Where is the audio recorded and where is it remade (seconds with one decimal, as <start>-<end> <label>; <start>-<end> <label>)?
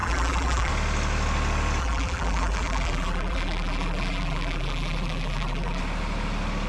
0.0-0.7 remade; 0.7-1.8 recorded; 1.8-5.8 remade; 5.8-6.7 recorded